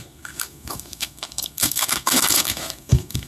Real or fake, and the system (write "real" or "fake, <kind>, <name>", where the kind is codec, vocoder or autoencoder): fake, codec, SNAC